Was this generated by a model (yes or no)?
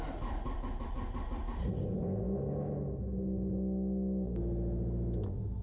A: no